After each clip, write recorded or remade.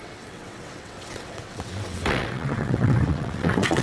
remade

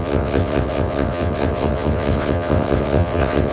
remade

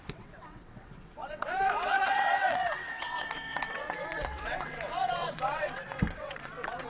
remade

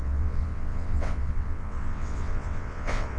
remade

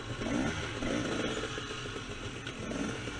recorded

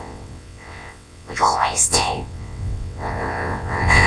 remade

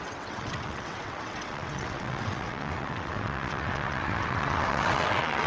remade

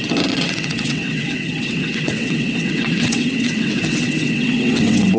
remade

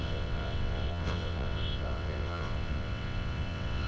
remade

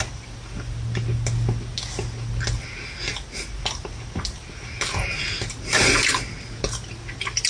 recorded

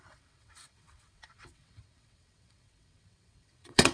remade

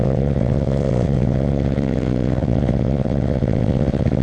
remade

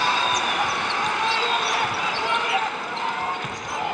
recorded